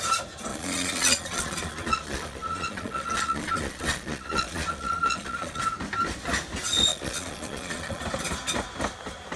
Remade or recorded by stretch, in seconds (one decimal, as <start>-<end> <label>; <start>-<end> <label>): 0.0-0.5 recorded; 0.5-5.6 remade; 5.6-6.9 recorded; 6.9-8.0 remade; 8.0-9.4 recorded

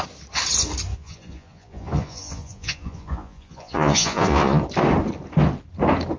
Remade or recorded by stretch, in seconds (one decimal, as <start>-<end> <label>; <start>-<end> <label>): 0.0-0.9 recorded; 0.9-4.6 remade; 4.6-6.2 recorded

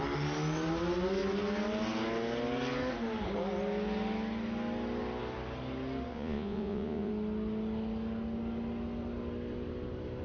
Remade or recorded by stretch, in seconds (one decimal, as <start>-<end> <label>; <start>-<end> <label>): 0.0-6.1 recorded; 6.1-7.1 remade; 7.1-10.2 recorded

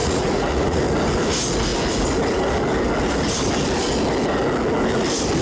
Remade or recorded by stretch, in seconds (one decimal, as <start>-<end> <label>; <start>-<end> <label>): 0.0-0.8 remade; 0.8-5.4 recorded

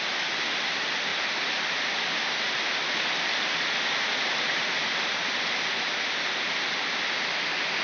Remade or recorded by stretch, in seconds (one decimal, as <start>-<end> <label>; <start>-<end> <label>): 0.0-7.8 recorded

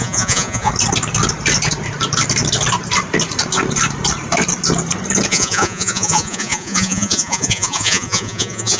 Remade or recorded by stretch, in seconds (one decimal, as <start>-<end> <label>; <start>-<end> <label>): 0.0-0.7 remade; 0.7-5.3 recorded; 5.3-8.8 remade